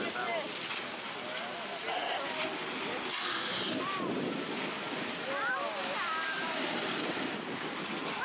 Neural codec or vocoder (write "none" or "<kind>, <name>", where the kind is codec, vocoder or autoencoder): none